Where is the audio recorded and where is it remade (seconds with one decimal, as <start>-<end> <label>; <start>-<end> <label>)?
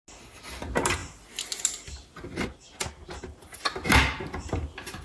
0.0-5.0 recorded